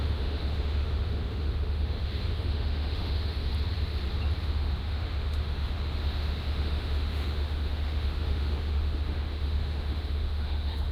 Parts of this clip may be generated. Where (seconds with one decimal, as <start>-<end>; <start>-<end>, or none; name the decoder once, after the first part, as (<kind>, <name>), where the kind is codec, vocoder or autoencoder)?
0.0-3.5 (autoencoder, DAC-VAE); 4.4-10.9